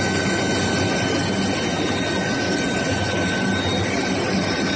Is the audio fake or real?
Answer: real